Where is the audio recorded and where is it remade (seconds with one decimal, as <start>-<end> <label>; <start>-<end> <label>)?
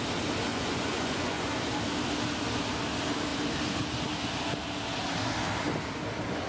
0.0-0.5 recorded; 0.5-1.5 remade; 1.5-6.5 recorded